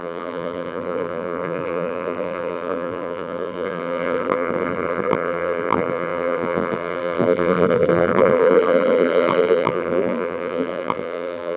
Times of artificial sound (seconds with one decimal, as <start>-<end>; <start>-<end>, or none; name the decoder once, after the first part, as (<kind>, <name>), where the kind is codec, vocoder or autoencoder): 0.0-11.6 (vocoder, BigVGAN v2)

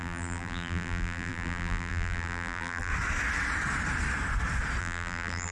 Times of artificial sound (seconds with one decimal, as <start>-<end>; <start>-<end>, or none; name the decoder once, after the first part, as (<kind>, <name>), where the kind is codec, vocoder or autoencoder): 0.0-2.9 (vocoder, BigVGAN v2); 4.8-5.5

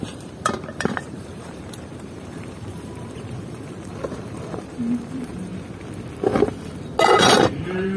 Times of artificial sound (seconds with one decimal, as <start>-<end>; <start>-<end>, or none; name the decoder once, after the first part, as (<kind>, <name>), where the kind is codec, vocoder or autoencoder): 0.0-5.5 (vocoder, BigVGAN v2); 7.1-8.0

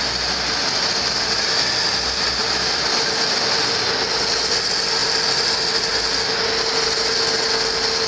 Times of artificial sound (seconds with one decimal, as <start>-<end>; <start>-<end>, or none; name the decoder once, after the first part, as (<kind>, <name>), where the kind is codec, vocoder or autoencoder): 2.4-3.8 (vocoder, BigVGAN v2); 5.0-5.5

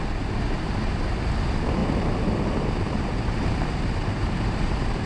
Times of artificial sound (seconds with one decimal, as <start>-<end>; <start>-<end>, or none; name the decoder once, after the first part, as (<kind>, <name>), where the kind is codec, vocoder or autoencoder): 1.8-5.1 (vocoder, BigVGAN v2)

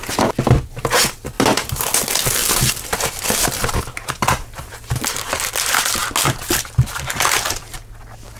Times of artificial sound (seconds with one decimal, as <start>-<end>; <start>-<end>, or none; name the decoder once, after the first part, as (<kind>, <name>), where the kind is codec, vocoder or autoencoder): 2.4-4.7 (vocoder, BigVGAN v2)